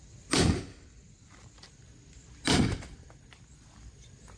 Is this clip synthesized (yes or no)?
no